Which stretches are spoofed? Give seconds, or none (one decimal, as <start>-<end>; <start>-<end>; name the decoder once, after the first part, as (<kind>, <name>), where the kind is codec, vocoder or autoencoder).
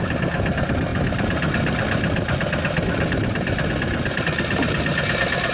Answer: none